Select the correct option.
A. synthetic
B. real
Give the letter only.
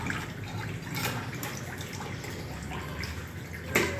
B